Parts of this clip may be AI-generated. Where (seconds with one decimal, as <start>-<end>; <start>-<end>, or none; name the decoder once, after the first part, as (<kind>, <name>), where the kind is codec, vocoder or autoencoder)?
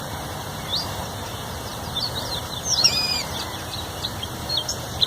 0.0-1.7 (vocoder, BigVGAN v2); 2.2-5.1